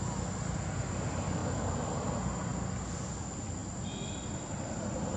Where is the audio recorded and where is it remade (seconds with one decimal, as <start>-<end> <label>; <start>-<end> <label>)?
0.0-1.4 recorded; 1.4-2.1 remade; 2.1-3.6 recorded; 3.6-5.2 remade